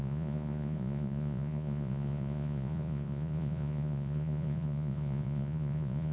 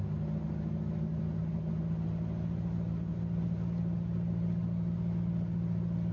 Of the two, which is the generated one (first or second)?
first